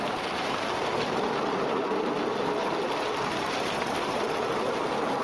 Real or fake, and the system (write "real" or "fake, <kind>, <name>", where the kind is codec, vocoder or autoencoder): real